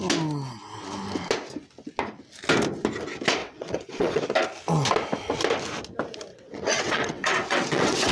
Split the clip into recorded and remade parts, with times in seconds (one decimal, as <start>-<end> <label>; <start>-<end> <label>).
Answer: 0.0-3.4 recorded; 3.4-4.2 remade; 4.2-6.3 recorded; 6.3-8.1 remade